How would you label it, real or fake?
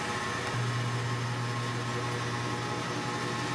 real